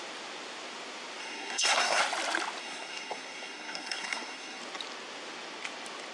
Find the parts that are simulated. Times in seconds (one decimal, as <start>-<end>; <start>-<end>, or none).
1.2-2.0; 2.6-4.6